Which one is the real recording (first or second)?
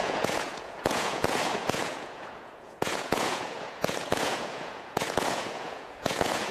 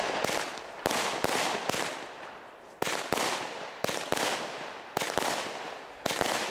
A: second